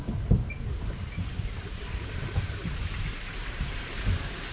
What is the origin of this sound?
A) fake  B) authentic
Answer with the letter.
A